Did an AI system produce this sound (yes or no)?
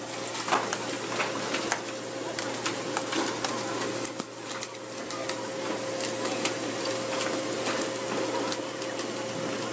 no